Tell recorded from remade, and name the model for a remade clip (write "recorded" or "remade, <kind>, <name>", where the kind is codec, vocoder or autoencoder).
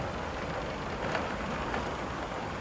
recorded